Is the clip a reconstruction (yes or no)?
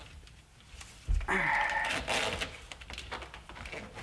no